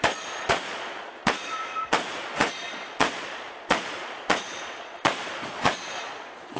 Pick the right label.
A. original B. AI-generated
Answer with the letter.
B